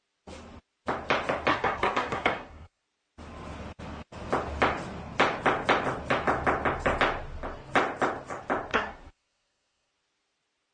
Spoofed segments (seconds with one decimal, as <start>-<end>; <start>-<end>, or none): 1.5-2.8; 8.7-9.9